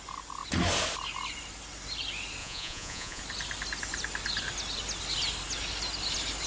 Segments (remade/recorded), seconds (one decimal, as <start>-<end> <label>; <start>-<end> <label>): 0.0-2.4 recorded; 2.4-3.2 remade; 3.2-6.5 recorded